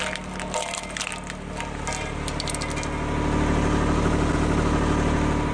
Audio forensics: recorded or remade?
recorded